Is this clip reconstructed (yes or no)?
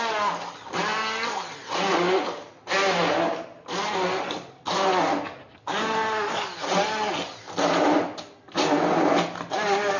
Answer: no